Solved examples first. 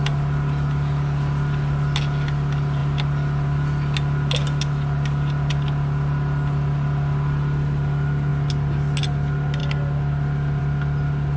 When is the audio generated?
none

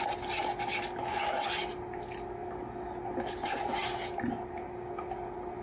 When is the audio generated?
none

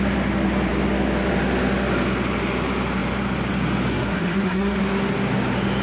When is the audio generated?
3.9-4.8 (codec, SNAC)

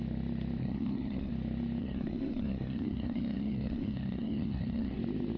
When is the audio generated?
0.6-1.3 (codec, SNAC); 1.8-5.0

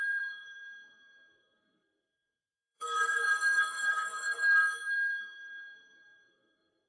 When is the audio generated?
0.0-6.9 (codec, SNAC)